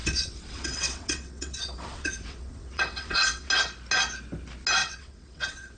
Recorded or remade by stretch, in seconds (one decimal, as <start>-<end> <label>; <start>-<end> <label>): 0.0-3.5 remade; 3.5-4.8 recorded; 4.8-5.8 remade